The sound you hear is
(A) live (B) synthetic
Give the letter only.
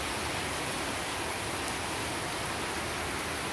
A